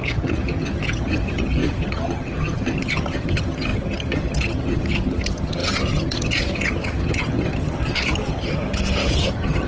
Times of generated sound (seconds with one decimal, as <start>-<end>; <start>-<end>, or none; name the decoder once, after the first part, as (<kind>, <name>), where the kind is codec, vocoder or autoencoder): 0.0-9.7 (vocoder, HiFi-GAN)